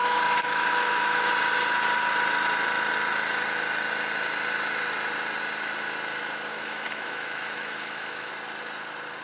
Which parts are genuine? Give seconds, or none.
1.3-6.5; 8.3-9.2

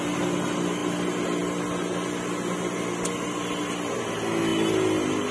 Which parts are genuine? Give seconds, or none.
0.0-5.3

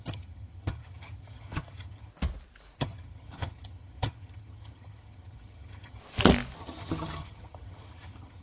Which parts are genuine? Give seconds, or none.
2.1-2.8; 6.0-6.6

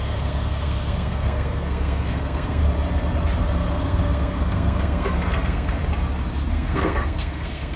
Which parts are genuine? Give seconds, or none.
2.6-3.7; 5.8-6.5

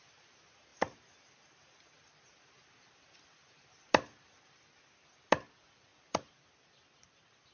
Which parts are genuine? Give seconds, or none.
0.0-7.5